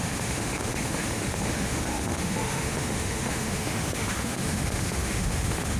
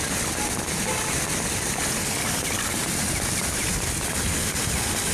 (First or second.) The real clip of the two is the second